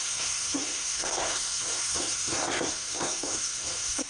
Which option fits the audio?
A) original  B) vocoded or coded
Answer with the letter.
B